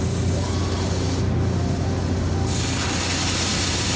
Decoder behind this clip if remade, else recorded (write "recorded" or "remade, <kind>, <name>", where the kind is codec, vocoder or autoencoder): recorded